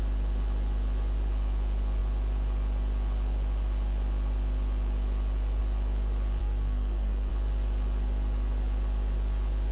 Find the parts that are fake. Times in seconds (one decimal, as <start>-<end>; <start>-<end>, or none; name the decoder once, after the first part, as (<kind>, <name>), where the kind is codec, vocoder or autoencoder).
6.4-7.3 (codec, SNAC)